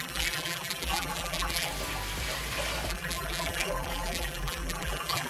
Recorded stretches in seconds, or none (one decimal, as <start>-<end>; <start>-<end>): 1.7-2.9

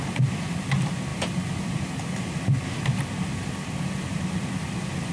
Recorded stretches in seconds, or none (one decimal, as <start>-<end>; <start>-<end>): none

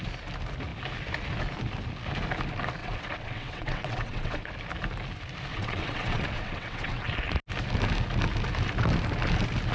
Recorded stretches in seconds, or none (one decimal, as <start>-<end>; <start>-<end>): 0.0-2.8; 4.5-5.5; 7.0-9.7

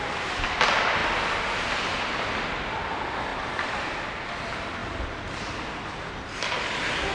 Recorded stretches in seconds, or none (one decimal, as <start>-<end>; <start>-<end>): 0.0-1.0; 2.0-3.3; 3.9-7.1

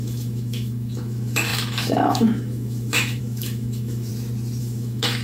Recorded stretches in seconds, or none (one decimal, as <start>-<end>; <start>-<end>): 4.1-4.6